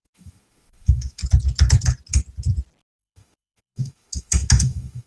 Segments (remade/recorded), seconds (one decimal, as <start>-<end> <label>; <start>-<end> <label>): 0.0-1.2 remade; 1.2-3.0 recorded; 3.0-5.1 remade